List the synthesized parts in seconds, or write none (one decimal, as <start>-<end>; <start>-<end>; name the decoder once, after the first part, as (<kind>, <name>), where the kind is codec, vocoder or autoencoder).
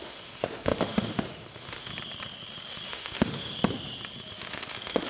0.0-1.9 (autoencoder, DAC-VAE); 2.9-3.5; 4.5-5.1